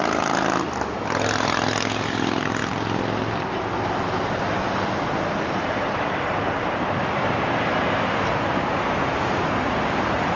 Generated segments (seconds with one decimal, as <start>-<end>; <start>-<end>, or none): none